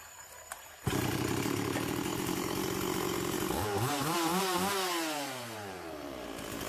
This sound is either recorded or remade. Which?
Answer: remade